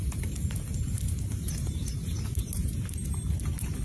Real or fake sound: fake